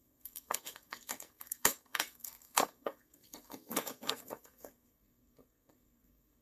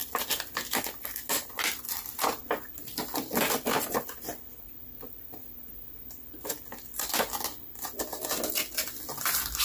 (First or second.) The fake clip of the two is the first